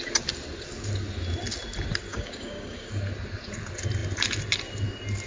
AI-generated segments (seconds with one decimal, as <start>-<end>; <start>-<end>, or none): 2.1-2.9